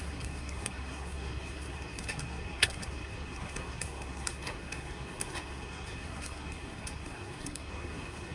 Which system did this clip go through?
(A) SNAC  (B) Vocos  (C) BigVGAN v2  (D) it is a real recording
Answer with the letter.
A